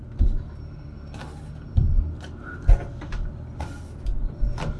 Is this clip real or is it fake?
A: real